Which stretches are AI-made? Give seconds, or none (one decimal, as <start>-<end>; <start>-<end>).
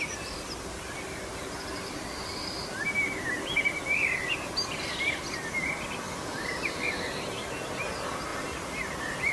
none